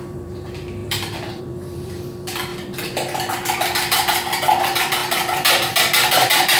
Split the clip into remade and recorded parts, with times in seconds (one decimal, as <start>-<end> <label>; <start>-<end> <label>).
0.0-2.5 remade; 2.5-3.3 recorded; 3.3-6.6 remade